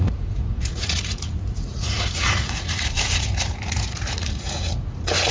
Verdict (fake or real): fake